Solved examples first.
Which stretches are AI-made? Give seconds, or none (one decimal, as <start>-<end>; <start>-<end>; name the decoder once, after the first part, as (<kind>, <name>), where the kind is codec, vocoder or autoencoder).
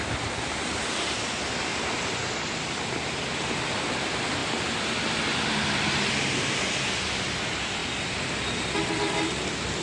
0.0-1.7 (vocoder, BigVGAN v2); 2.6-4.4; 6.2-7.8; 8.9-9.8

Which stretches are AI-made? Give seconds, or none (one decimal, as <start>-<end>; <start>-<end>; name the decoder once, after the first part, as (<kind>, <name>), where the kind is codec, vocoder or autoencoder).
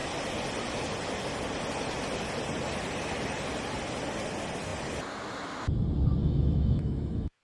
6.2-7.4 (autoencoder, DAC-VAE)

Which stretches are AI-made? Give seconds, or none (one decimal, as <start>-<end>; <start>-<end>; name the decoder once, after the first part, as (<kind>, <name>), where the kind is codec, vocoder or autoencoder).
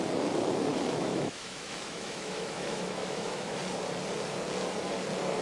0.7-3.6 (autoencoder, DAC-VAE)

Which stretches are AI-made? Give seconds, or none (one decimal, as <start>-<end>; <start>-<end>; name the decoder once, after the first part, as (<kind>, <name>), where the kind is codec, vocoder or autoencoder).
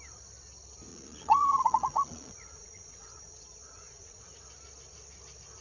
0.9-4.2 (vocoder, Vocos)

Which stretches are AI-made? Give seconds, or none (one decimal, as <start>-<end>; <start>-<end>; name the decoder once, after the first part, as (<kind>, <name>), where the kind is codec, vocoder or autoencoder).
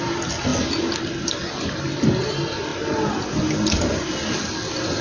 none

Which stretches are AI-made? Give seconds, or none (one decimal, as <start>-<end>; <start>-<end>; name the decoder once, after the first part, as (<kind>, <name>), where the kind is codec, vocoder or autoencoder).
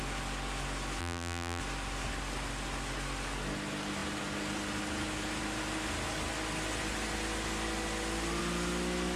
1.0-1.6 (vocoder, BigVGAN v2)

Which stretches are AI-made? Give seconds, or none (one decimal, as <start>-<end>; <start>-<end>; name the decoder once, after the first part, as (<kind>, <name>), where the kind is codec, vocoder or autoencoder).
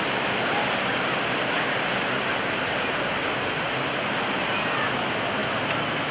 none